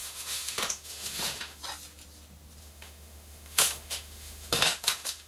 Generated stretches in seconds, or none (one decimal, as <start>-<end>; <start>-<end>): 0.0-1.6; 2.6-5.3